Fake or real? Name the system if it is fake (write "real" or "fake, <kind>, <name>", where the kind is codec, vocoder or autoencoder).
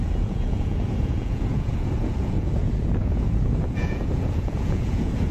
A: fake, vocoder, Vocos